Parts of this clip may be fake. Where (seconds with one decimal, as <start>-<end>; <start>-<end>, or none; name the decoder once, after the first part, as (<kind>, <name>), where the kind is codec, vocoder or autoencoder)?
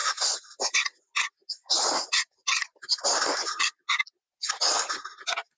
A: none